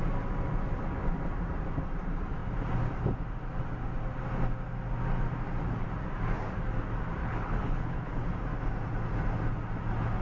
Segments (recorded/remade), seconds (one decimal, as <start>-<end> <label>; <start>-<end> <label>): 0.0-7.2 recorded; 7.2-8.3 remade; 8.3-10.2 recorded